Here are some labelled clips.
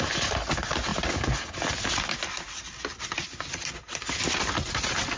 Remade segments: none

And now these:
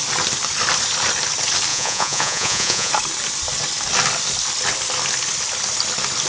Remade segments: 1.7-2.9 (vocoder, Vocos)

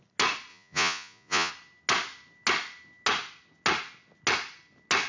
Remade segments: 0.5-1.5 (vocoder, Vocos)